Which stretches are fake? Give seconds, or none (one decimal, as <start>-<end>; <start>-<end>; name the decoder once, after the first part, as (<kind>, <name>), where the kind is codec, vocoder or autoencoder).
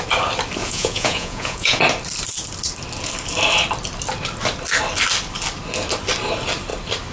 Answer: 0.6-1.8 (vocoder, Vocos)